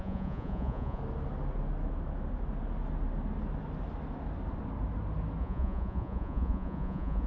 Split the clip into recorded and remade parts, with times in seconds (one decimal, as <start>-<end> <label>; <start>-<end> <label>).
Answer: 0.0-1.0 remade; 1.0-5.4 recorded; 5.4-7.3 remade